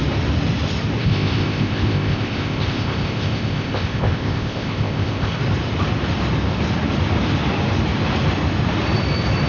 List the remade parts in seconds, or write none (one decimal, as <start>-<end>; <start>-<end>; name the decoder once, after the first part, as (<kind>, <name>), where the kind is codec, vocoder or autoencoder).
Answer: 1.0-5.4 (codec, ZipCodec)